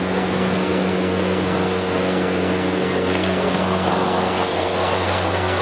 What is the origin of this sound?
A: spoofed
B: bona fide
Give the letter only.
A